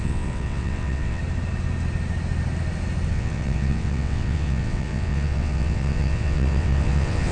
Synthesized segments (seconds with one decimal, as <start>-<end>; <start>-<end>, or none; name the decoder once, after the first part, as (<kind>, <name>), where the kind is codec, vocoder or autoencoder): 0.0-1.2 (vocoder, WaveNeXt); 3.1-7.3